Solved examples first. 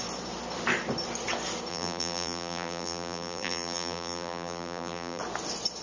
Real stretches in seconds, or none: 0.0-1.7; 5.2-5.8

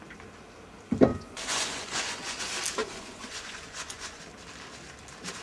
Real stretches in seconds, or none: 0.0-1.1; 2.4-2.8; 4.2-5.4

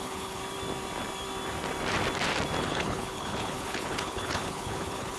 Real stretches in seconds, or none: 0.4-2.6

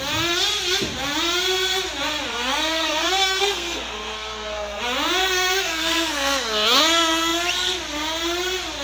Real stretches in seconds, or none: 0.0-2.3; 4.8-5.2; 6.8-8.8

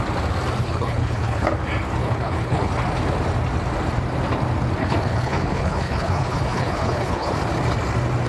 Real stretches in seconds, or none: 0.0-0.6; 1.5-2.0; 2.7-4.8; 7.3-8.3

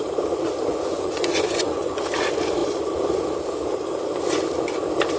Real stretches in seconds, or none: 0.0-0.7; 2.0-5.2